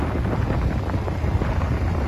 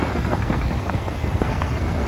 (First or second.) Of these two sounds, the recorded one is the first